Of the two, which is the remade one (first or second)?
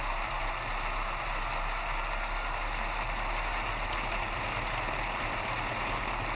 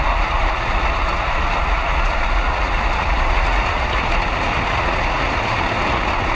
second